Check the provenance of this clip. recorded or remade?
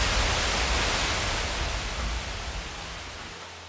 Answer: recorded